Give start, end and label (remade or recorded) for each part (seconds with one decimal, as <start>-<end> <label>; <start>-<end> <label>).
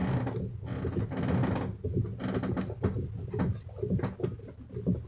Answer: 0.0-5.1 recorded